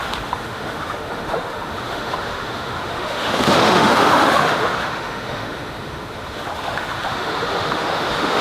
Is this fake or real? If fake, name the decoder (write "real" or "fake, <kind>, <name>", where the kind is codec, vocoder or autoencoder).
fake, autoencoder, DAC-VAE